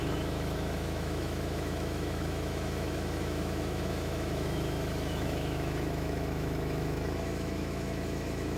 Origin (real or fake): fake